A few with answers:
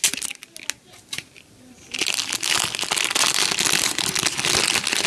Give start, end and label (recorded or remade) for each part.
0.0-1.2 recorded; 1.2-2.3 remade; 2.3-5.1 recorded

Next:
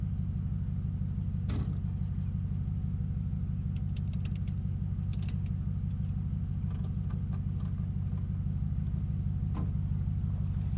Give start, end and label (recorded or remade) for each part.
0.0-10.8 recorded

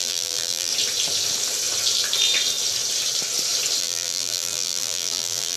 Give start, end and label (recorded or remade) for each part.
0.0-0.7 remade; 0.7-3.8 recorded; 3.8-5.6 remade

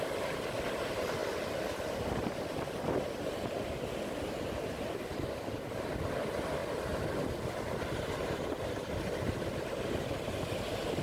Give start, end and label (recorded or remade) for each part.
0.0-11.0 recorded